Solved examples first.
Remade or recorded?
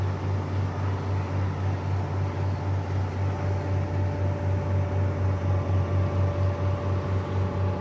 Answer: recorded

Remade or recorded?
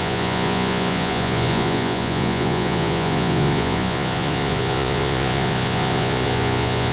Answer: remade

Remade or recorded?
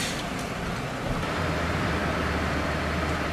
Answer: remade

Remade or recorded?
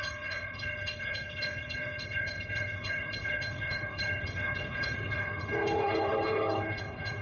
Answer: remade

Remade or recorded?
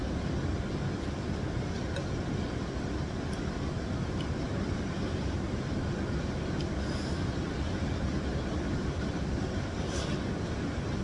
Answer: recorded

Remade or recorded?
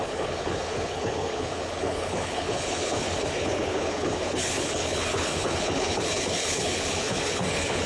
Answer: remade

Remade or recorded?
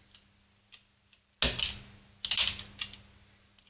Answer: recorded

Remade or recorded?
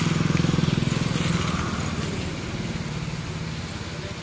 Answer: recorded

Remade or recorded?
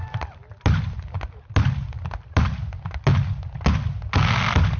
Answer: recorded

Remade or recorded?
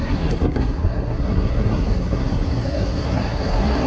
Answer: remade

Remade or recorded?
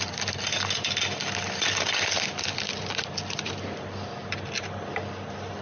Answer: recorded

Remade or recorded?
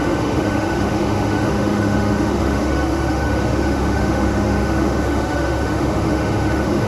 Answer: remade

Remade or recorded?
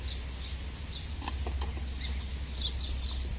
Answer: recorded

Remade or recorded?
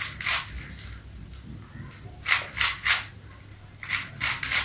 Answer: recorded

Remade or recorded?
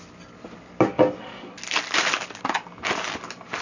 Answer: recorded